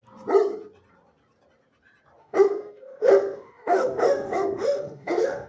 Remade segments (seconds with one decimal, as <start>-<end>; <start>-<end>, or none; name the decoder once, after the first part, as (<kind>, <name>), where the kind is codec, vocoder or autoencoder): 2.2-5.5 (autoencoder, DAC-VAE)